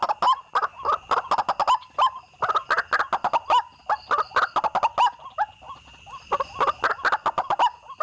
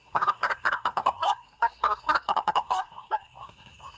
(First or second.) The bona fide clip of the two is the first